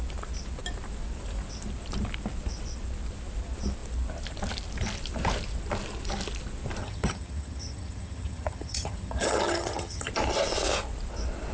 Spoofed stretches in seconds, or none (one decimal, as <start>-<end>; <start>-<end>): 6.8-10.1

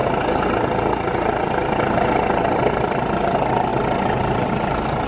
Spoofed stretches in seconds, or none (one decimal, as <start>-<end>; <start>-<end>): none

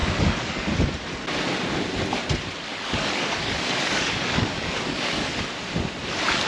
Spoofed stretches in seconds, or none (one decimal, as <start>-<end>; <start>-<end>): 0.0-0.8; 2.7-5.4

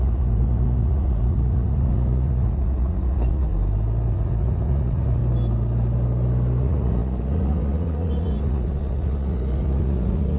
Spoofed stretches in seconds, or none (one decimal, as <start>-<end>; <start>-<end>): 0.0-3.5; 4.1-5.2; 6.6-10.4